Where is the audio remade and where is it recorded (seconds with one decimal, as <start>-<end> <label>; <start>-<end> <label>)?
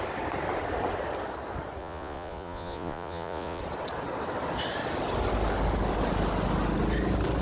0.0-1.8 recorded; 1.8-3.6 remade; 3.6-7.4 recorded